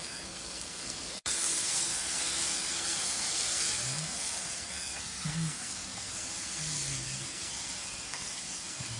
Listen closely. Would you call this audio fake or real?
fake